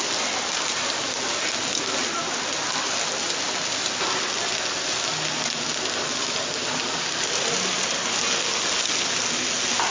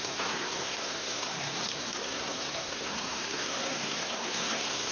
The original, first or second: first